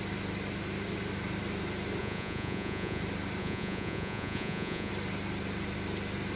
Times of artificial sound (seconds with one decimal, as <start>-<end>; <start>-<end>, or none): 2.0-3.0; 3.4-4.9